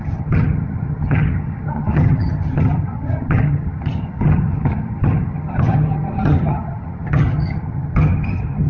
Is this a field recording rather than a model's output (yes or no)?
no